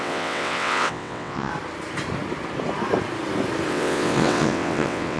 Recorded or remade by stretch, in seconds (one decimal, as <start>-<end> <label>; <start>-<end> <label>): 0.0-1.5 remade; 1.5-3.7 recorded; 3.7-5.2 remade